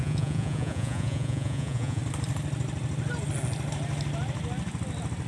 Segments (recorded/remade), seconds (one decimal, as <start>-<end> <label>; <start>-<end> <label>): 0.0-2.0 remade; 2.0-5.3 recorded